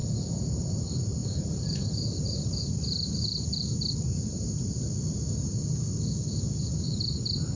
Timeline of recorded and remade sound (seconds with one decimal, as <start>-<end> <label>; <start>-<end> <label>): 0.0-0.6 recorded; 0.6-5.6 remade; 5.6-6.2 recorded; 6.2-7.6 remade